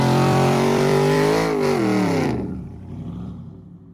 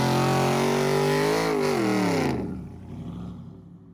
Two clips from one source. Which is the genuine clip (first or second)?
second